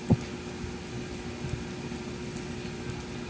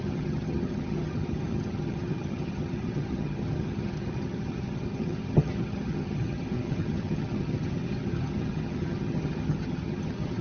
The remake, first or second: second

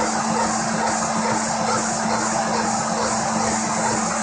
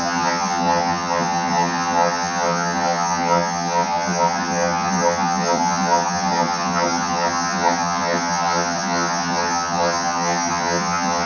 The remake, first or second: second